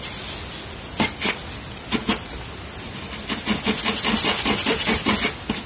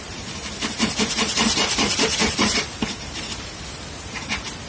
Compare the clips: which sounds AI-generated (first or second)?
second